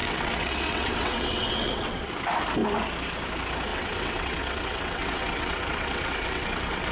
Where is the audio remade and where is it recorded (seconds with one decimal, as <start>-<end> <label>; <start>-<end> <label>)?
0.0-2.1 remade; 2.1-3.7 recorded; 3.7-6.9 remade